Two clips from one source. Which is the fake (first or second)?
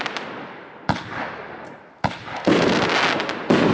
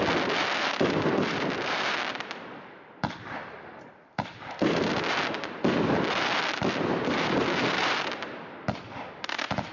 second